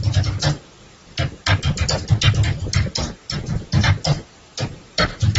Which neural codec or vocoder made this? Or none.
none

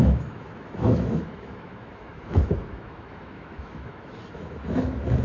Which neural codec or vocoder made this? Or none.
autoencoder, DAC-VAE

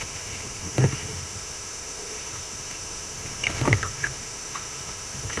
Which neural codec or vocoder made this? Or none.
autoencoder, DAC-VAE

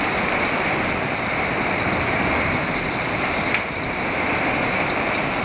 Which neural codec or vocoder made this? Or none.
none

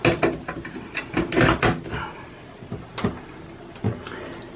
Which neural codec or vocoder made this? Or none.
none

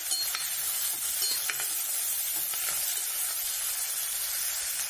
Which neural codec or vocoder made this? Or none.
none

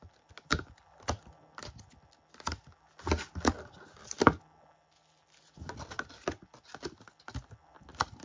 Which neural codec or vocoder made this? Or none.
none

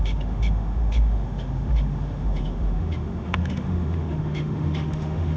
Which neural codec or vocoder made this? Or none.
autoencoder, DAC-VAE